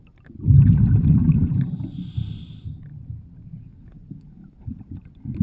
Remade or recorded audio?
recorded